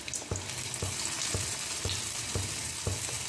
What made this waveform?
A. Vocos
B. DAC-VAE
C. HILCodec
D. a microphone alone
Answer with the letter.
D